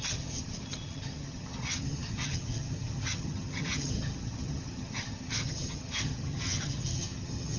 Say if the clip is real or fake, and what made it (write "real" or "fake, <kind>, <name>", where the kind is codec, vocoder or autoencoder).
fake, vocoder, HiFi-GAN